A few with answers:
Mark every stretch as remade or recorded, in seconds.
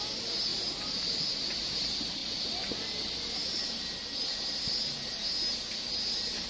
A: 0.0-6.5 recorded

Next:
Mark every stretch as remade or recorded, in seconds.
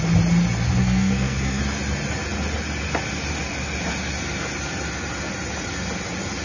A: 0.0-0.8 recorded; 0.8-1.6 remade; 1.6-6.4 recorded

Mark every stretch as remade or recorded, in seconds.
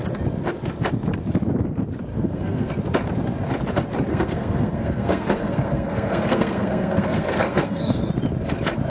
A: 0.0-2.1 recorded; 2.1-2.7 remade; 2.7-4.1 recorded; 4.1-8.1 remade; 8.1-8.9 recorded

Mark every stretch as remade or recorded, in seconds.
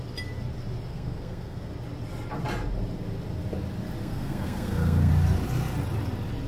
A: 0.0-0.9 recorded; 0.9-1.7 remade; 1.7-4.0 recorded; 4.0-5.1 remade; 5.1-6.5 recorded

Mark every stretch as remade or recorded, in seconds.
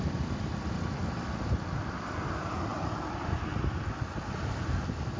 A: 0.0-5.2 recorded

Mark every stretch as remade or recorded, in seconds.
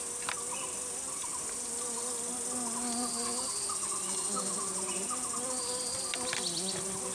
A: 0.0-7.1 recorded